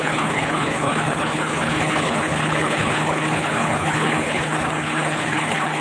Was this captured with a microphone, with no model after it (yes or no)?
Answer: no